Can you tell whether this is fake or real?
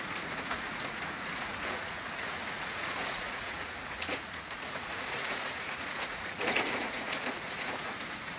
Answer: fake